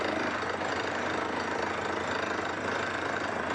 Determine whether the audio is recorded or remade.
remade